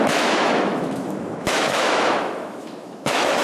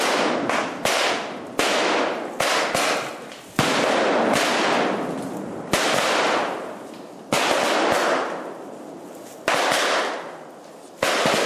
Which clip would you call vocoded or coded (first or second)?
first